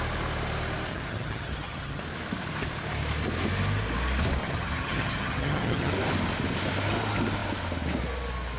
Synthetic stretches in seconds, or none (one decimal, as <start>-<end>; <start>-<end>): 0.9-2.0; 4.4-5.9